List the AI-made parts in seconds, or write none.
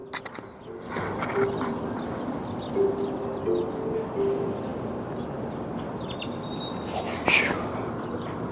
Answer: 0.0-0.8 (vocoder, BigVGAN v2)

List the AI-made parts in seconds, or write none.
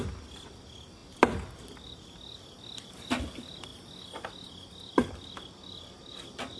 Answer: none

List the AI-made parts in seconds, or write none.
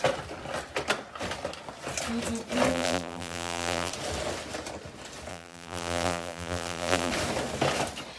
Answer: 2.7-3.9 (vocoder, BigVGAN v2); 5.3-7.1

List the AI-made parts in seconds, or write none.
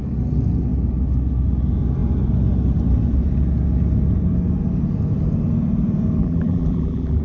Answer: 6.2-7.2 (vocoder, BigVGAN v2)